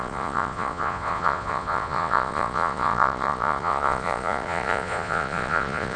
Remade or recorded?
remade